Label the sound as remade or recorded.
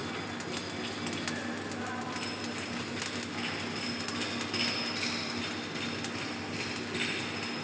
recorded